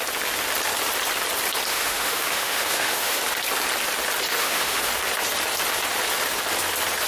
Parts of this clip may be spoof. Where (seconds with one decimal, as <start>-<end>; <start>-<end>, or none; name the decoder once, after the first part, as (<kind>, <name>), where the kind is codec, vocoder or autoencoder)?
1.7-3.2 (autoencoder, DAC-VAE); 4.3-4.9